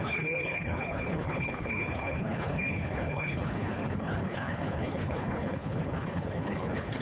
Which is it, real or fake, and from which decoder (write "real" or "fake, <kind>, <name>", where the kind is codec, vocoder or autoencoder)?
fake, codec, HILCodec